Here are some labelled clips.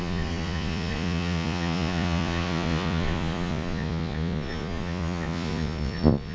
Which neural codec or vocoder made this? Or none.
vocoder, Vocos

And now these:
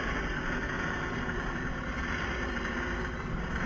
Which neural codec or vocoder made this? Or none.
none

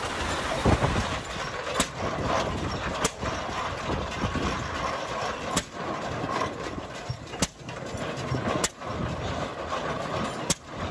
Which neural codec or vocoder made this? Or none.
none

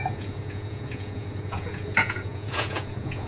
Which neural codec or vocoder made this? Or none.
vocoder, Vocos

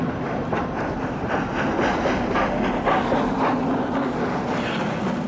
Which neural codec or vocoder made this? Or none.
none